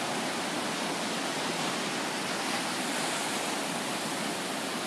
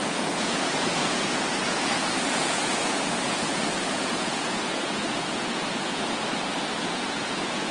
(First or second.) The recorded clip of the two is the first